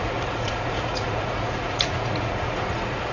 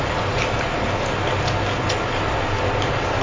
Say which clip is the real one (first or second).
second